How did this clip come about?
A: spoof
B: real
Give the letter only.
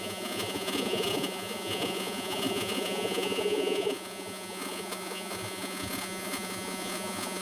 A